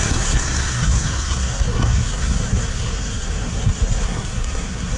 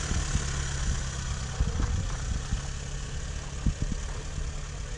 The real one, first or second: second